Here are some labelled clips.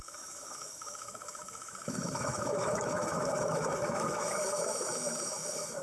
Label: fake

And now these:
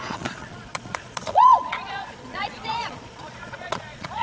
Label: fake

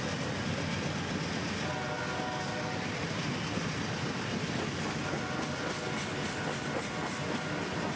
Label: real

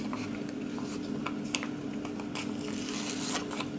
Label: real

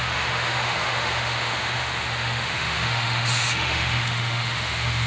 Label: fake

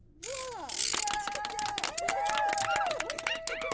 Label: real